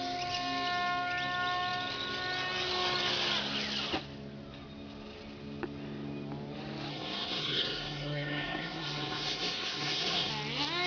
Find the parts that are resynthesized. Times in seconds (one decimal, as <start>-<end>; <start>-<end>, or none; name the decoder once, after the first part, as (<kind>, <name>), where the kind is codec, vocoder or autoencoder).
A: 6.9-10.3 (codec, SNAC)